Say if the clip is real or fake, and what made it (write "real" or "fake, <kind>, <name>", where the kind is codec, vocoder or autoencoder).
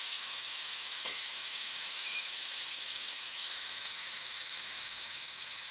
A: fake, autoencoder, DAC-VAE